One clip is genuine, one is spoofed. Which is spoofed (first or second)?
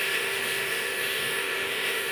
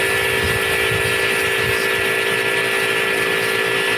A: first